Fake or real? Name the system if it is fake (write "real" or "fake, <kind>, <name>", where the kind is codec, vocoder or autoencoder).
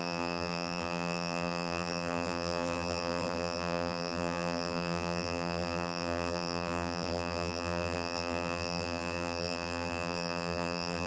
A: fake, vocoder, BigVGAN v2